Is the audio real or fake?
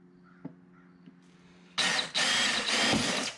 real